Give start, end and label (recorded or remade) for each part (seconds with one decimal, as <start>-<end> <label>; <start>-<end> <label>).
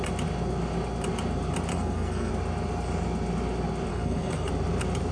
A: 0.0-1.7 recorded; 1.7-2.3 remade; 2.3-3.9 recorded; 3.9-4.5 remade; 4.5-5.1 recorded